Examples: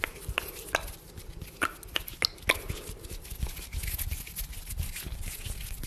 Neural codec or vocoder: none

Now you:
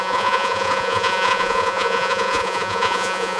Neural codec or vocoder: vocoder, Vocos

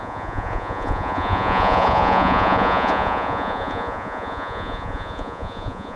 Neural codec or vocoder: vocoder, Vocos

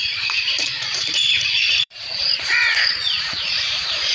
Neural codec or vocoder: vocoder, Vocos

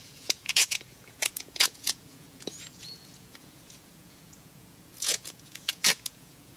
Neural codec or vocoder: vocoder, Vocos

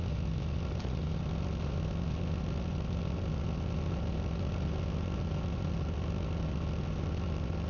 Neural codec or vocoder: none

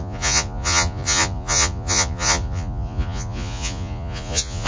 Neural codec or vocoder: vocoder, Vocos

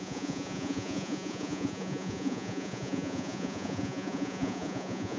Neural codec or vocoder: vocoder, Vocos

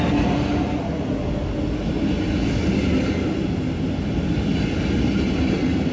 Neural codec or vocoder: none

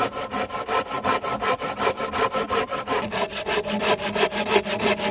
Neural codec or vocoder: none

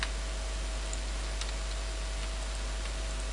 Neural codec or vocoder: none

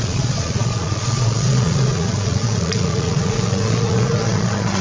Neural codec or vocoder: vocoder, Vocos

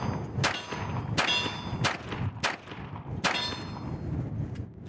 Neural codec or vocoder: none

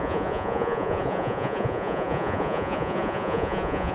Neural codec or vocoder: vocoder, Vocos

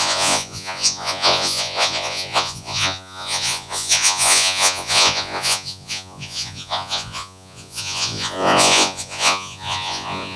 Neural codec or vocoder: vocoder, Vocos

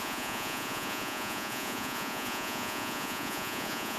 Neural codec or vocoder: vocoder, Vocos